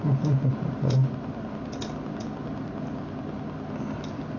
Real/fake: real